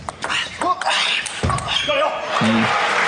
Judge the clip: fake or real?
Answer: fake